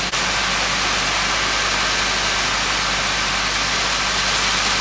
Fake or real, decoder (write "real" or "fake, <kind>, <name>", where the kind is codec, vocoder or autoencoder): real